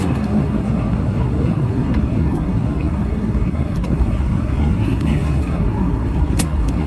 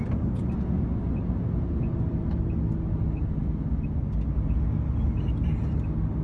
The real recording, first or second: second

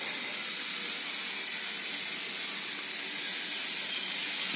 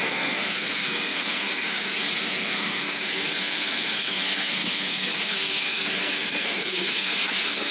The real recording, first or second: first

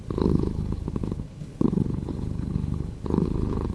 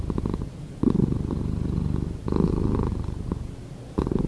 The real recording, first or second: second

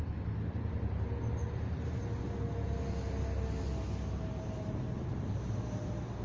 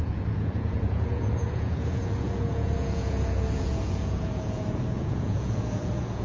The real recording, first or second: first